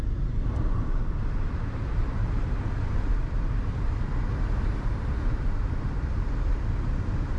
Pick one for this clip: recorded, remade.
remade